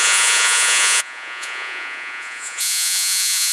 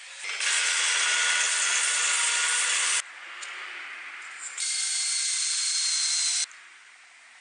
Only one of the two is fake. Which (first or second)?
first